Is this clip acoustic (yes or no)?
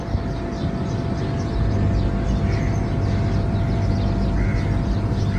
yes